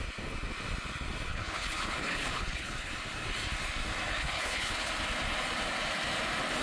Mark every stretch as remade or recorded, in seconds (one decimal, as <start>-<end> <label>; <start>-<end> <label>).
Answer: 0.0-1.3 recorded; 1.3-2.9 remade; 2.9-4.1 recorded; 4.1-4.9 remade; 4.9-6.6 recorded